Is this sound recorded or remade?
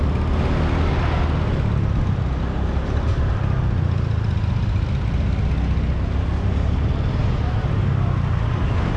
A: recorded